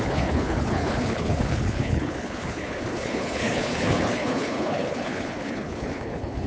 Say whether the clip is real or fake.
fake